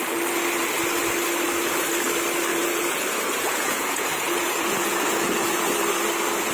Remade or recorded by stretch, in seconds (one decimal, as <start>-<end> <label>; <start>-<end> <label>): 0.0-2.5 recorded; 2.5-5.7 remade; 5.7-6.5 recorded